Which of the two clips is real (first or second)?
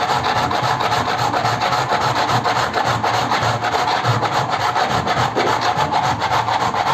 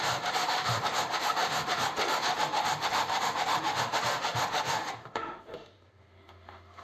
first